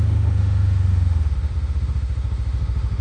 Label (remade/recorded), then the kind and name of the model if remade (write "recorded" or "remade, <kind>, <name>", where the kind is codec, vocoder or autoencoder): remade, autoencoder, DAC-VAE